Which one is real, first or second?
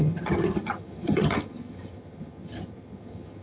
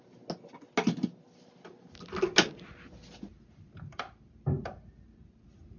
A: second